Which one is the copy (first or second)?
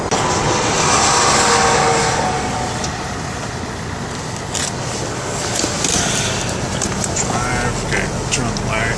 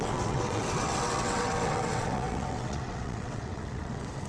second